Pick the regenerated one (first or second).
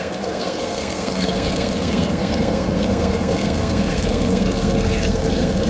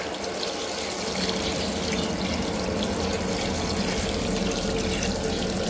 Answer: first